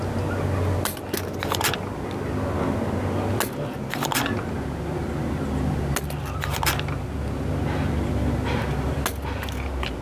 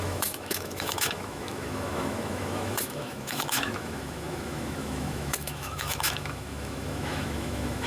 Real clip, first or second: first